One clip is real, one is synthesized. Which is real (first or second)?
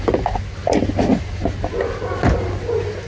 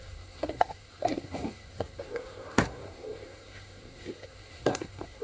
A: first